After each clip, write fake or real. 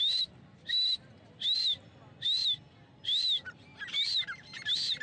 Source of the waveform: real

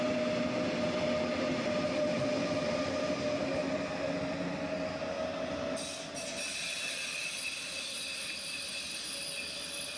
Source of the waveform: real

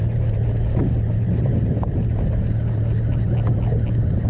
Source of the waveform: real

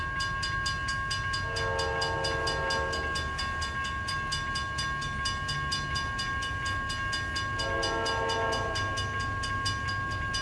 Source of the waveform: real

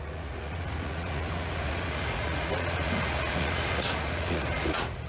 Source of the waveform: fake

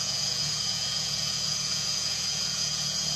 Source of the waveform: fake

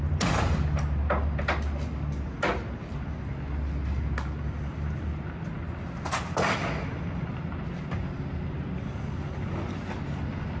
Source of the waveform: real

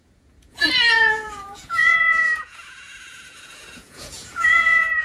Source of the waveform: fake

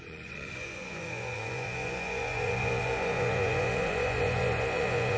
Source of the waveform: fake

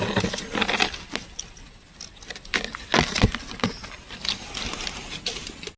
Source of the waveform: real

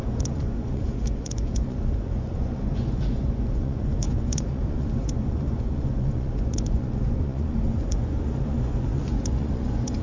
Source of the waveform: fake